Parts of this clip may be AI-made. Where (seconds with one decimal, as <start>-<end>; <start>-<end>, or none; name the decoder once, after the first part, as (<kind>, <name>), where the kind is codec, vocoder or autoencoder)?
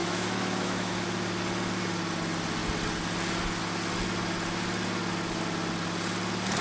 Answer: 0.0-0.9 (autoencoder, DAC-VAE)